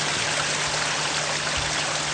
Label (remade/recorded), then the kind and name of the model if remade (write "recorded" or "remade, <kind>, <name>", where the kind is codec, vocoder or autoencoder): recorded